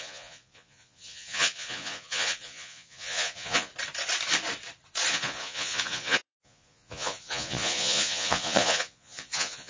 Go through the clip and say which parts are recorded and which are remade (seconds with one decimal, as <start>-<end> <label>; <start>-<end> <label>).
0.0-3.7 remade; 3.7-5.1 recorded; 5.1-9.7 remade